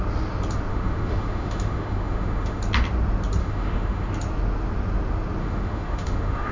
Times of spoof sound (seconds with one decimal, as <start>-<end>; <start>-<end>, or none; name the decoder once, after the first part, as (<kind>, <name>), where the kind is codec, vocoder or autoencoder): 0.7-2.6 (autoencoder, DAC-VAE); 3.4-4.1; 5.4-6.5